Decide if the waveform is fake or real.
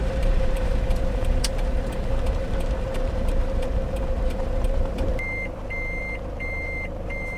fake